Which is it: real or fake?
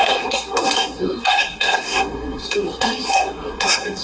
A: fake